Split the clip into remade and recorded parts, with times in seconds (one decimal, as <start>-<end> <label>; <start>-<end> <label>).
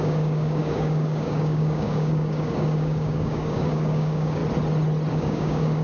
0.0-4.4 remade; 4.4-5.1 recorded; 5.1-5.8 remade